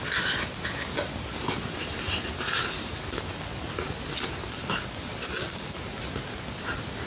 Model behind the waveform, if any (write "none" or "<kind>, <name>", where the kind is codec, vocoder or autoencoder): none